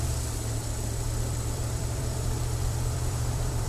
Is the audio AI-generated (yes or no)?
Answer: yes